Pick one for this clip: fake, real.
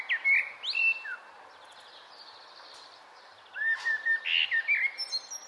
real